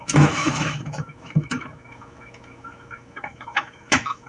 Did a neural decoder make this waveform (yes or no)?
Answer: yes